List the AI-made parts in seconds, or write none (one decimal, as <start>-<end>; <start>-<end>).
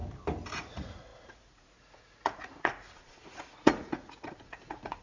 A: 0.5-5.0